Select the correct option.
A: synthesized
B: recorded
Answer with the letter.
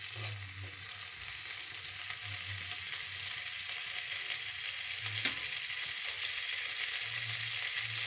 B